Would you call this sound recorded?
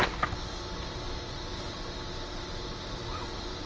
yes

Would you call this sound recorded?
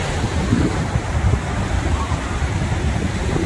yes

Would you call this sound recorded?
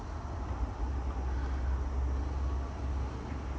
yes